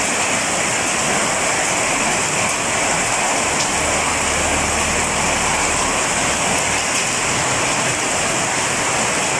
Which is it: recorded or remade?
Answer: recorded